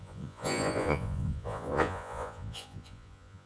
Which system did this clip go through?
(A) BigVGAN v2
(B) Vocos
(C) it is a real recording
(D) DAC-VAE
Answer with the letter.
B